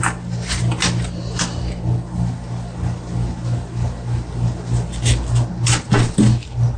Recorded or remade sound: recorded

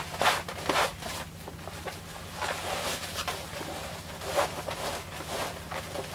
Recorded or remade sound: recorded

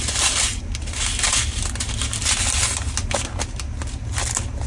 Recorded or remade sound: recorded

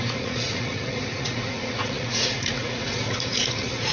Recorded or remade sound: remade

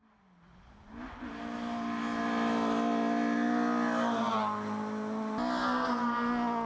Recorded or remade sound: recorded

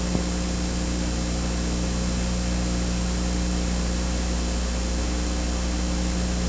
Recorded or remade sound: recorded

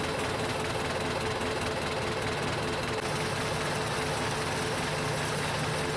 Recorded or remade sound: recorded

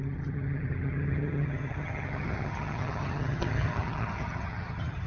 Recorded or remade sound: remade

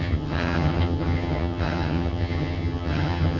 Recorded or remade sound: remade